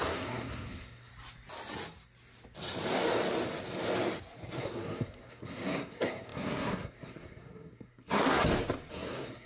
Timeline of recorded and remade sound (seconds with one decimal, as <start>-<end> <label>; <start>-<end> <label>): 0.0-1.1 remade; 1.1-4.6 recorded; 4.6-8.4 remade; 8.4-8.9 recorded; 8.9-9.5 remade